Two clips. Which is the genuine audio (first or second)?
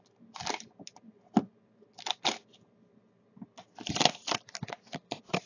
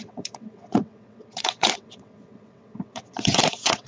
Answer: first